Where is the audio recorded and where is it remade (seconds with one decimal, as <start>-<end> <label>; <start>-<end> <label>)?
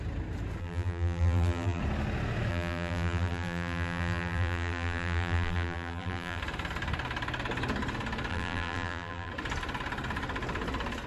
0.0-0.6 recorded; 0.6-1.8 remade; 1.8-2.5 recorded; 2.5-6.4 remade; 6.4-8.3 recorded; 8.3-9.3 remade; 9.3-11.1 recorded